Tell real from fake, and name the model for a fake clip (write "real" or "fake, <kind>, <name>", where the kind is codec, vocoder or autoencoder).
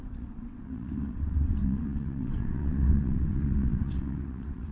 fake, vocoder, WaveNeXt